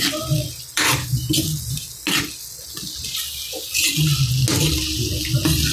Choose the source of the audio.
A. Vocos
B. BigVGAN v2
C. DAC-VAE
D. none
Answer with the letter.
D